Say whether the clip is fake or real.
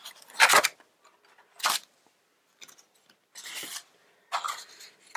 real